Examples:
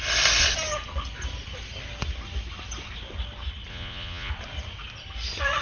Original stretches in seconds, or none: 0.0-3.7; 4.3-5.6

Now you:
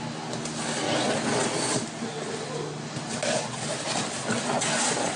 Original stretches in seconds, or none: 0.0-5.2

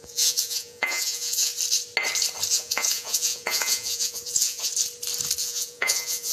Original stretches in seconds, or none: 1.5-2.5; 4.7-5.4

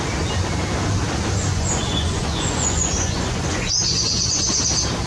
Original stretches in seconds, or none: 0.0-1.4; 4.5-5.1

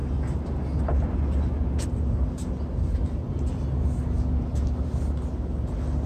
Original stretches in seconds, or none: 0.0-6.1

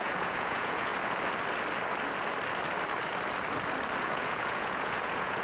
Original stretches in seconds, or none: 0.9-4.0

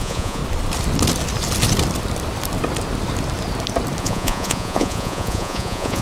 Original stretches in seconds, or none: 0.4-4.0

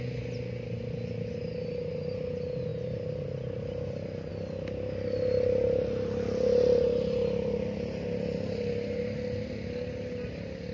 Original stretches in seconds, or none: 0.0-10.7